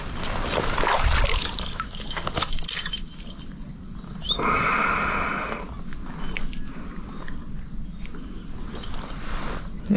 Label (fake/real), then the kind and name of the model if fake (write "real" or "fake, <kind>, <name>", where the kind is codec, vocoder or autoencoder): real